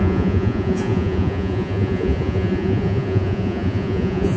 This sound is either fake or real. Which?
fake